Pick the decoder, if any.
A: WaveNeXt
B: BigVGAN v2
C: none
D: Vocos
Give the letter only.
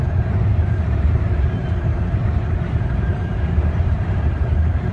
B